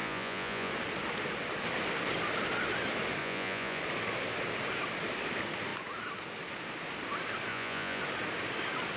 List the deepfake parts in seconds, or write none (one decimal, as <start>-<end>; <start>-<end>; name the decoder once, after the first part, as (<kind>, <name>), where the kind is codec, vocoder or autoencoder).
0.0-0.7 (vocoder, Vocos); 3.2-3.8; 7.5-8.0